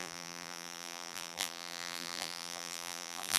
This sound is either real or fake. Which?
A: fake